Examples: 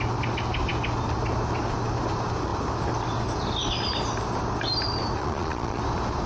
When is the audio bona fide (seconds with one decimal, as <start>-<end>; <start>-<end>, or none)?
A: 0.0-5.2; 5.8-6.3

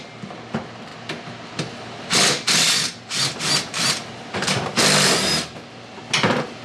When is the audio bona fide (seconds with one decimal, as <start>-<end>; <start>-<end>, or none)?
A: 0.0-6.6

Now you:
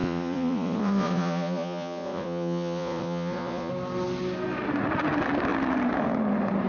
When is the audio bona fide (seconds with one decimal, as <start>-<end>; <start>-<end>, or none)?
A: 3.7-6.7

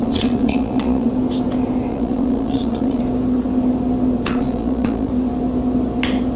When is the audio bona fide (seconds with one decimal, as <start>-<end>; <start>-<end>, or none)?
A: 1.1-1.9; 3.0-4.3; 5.1-6.4

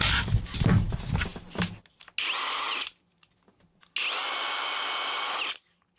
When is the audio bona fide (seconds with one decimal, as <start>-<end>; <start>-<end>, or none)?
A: 0.0-6.0

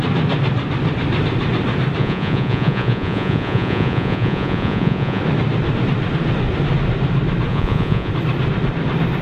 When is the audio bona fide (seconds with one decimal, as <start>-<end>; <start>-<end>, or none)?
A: 0.0-2.0; 5.2-7.5; 8.1-9.2

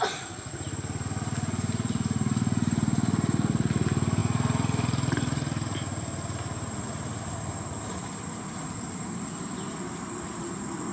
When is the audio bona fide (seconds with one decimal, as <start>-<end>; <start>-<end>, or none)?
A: 0.0-10.9

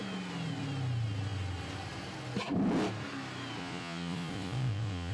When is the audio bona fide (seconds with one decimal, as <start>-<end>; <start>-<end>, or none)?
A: 0.0-3.6